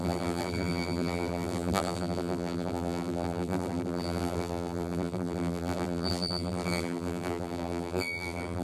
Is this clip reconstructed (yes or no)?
yes